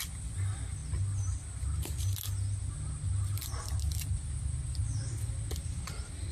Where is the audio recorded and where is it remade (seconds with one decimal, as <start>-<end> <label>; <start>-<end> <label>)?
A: 0.0-6.3 recorded